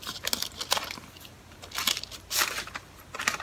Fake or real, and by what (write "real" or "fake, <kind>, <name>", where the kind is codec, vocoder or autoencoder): real